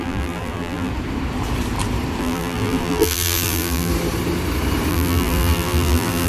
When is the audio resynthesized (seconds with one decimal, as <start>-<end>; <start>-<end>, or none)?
0.0-0.9; 2.2-3.9; 4.9-6.3